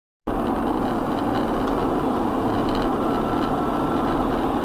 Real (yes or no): yes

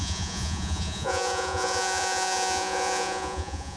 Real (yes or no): no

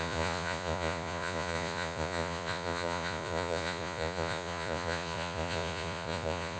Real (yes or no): no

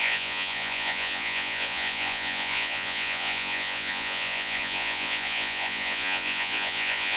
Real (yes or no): no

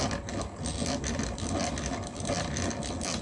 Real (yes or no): yes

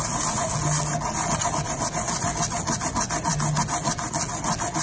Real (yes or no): yes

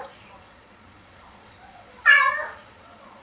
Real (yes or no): no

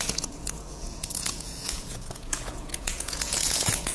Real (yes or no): no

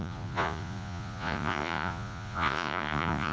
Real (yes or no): no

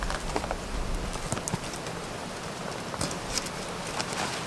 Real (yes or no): yes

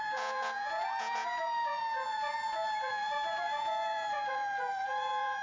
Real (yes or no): no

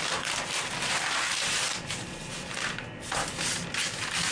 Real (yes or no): yes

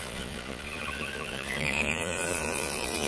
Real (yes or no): no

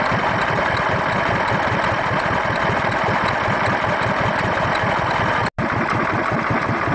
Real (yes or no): yes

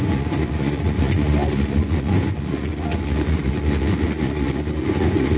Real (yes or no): no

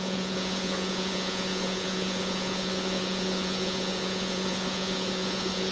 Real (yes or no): no